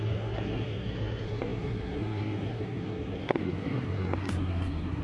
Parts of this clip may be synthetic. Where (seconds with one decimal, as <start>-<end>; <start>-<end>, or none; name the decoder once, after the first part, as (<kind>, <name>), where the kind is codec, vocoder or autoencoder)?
0.0-5.0 (codec, SNAC)